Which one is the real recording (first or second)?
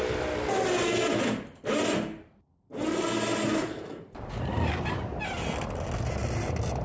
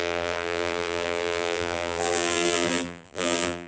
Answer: first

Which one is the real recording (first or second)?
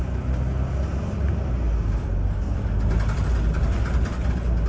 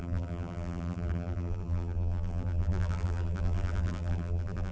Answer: first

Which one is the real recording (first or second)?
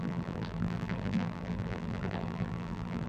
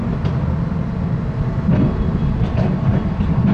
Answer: second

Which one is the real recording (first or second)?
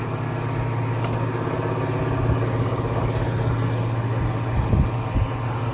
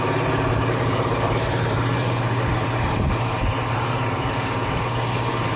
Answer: first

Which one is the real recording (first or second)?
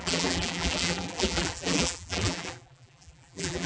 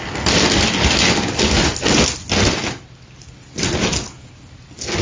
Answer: second